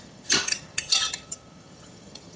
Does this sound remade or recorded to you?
remade